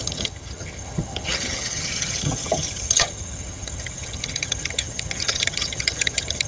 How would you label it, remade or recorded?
remade